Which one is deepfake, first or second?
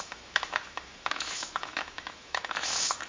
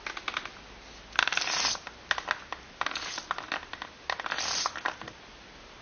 first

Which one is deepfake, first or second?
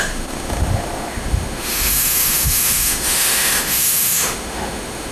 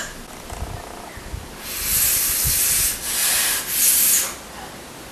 first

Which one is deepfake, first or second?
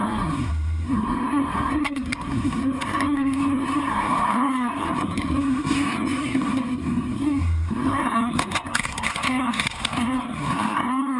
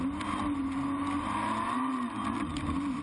first